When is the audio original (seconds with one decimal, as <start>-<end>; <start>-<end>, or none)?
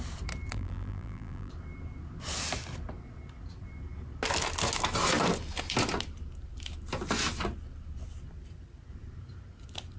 0.0-0.5; 1.5-10.0